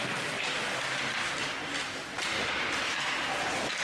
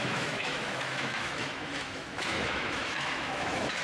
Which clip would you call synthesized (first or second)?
second